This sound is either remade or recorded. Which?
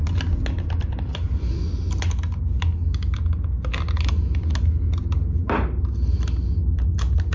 recorded